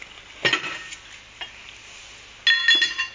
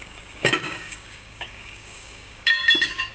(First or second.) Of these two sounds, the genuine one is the first